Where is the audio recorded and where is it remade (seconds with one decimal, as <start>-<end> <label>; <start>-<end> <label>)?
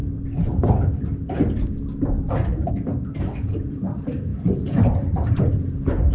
0.0-2.7 recorded; 2.7-6.1 remade